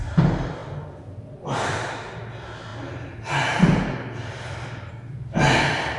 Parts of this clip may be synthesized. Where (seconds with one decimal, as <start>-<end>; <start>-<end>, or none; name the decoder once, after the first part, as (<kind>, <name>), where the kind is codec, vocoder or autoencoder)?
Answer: none